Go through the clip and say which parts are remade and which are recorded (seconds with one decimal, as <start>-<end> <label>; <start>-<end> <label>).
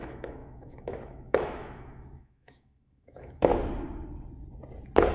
0.0-3.5 remade; 3.5-5.1 recorded